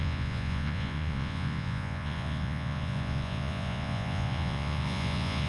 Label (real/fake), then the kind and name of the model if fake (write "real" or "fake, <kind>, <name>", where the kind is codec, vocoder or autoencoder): fake, vocoder, Vocos